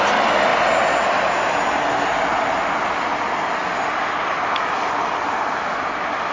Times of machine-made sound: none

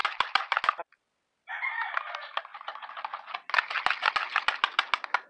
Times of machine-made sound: 0.0-0.6

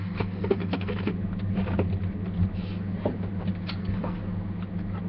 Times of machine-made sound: 0.0-1.1; 3.8-4.2

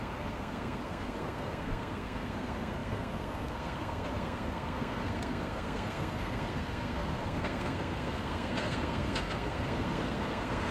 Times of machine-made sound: 0.0-10.7

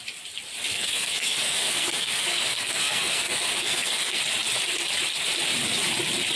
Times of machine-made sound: 0.7-4.2

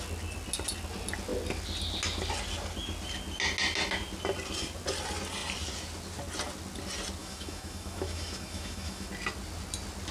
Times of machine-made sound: 7.2-9.1